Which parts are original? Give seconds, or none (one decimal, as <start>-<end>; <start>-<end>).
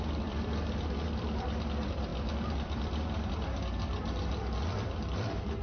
none